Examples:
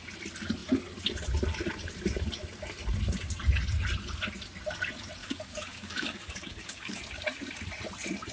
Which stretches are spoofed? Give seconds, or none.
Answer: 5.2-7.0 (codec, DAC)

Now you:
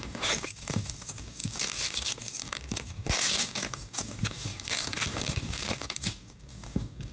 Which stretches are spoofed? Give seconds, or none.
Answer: 0.0-7.1 (codec, DAC)

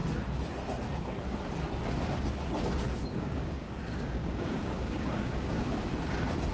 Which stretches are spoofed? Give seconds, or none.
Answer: 3.1-5.7 (codec, DAC)

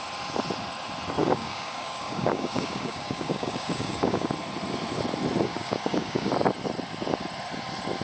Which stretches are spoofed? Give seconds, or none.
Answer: 1.2-4.3 (codec, DAC); 5.5-6.3

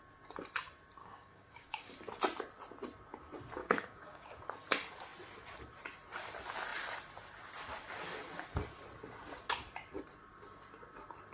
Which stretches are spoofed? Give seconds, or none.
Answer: 1.0-1.9 (codec, DAC); 3.6-4.4

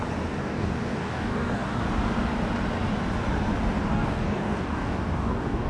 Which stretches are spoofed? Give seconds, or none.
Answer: 0.4-1.8 (codec, DAC); 3.9-5.7

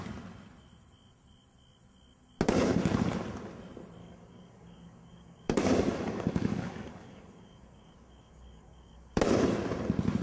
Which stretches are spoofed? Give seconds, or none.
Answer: 4.0-9.2 (codec, DAC)